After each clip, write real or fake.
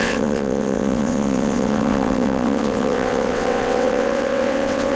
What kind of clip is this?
fake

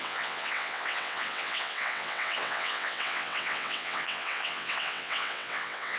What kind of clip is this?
fake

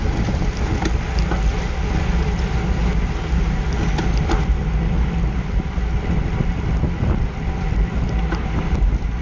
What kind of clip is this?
real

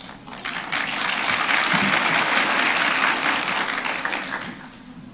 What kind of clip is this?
real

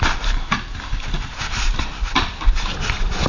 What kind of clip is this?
real